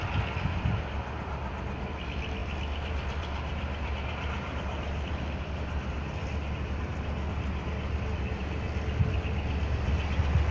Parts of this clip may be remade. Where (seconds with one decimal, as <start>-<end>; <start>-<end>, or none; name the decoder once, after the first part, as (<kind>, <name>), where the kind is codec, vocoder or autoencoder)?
2.4-3.9 (vocoder, BigVGAN v2)